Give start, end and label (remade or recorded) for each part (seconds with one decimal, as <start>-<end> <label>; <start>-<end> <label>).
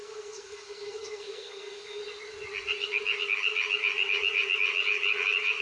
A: 0.0-2.0 remade; 2.0-5.6 recorded